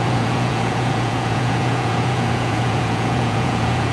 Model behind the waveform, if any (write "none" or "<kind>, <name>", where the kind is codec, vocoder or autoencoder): vocoder, Vocos